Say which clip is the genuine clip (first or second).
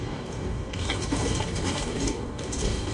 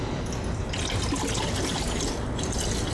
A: second